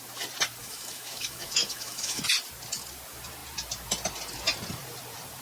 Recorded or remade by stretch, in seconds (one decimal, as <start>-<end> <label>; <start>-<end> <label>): 0.0-0.6 recorded; 0.6-2.2 remade; 2.2-5.4 recorded